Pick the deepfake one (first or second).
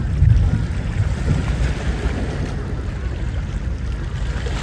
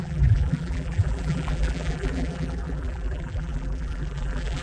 second